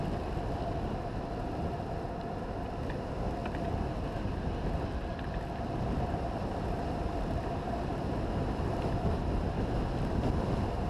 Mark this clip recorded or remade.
recorded